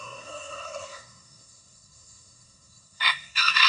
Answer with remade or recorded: remade